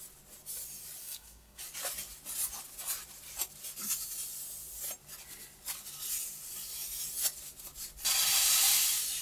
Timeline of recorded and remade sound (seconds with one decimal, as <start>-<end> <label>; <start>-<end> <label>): 0.0-1.0 recorded; 1.0-1.6 remade; 1.6-9.2 recorded